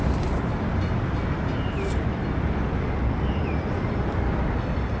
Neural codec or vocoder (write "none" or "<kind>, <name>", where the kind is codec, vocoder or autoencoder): none